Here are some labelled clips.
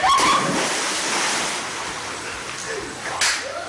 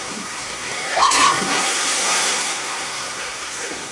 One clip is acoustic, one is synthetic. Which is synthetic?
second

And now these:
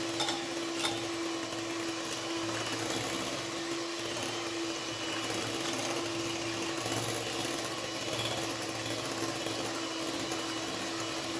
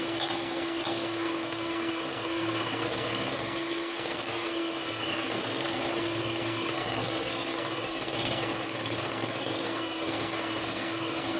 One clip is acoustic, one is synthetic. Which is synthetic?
second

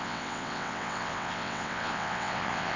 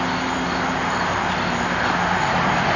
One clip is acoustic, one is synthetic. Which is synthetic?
first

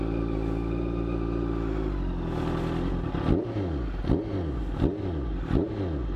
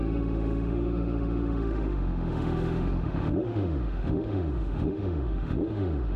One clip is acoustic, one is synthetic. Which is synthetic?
second